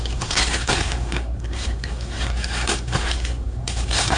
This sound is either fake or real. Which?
fake